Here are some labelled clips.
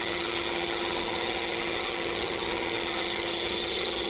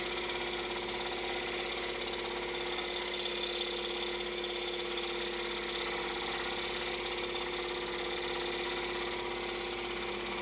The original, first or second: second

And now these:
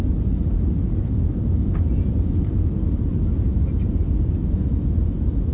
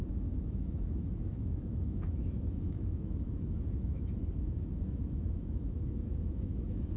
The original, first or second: first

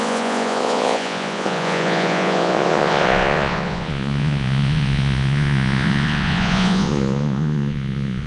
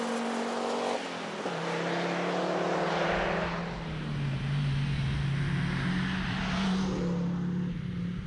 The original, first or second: second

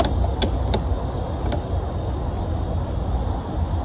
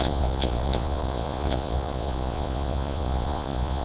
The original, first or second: first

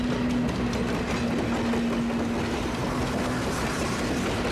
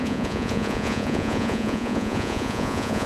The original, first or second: first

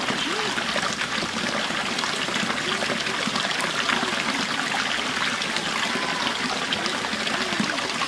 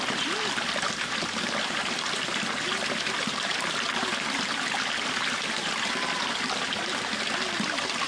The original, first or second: first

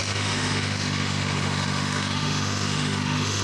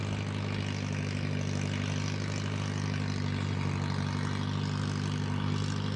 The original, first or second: second